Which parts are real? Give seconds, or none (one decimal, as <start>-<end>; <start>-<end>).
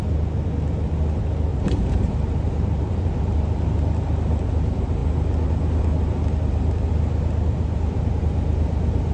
0.0-1.5; 3.1-9.1